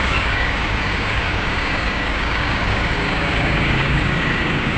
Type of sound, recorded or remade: remade